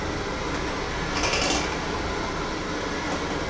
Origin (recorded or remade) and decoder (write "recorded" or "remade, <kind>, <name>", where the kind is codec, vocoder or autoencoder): recorded